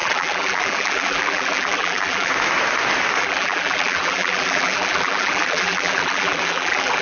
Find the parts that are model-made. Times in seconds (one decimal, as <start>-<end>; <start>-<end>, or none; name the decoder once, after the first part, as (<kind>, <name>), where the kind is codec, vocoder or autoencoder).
0.0-2.3 (vocoder, BigVGAN v2); 3.2-7.0